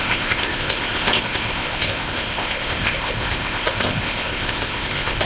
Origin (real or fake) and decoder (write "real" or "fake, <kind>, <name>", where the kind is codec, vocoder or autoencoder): fake, codec, ZipCodec